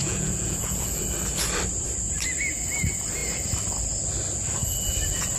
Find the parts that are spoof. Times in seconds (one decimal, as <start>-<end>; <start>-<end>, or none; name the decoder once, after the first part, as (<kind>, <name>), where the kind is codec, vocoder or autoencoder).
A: 0.0-1.0 (vocoder, Vocos)